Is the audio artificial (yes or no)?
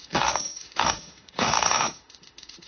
yes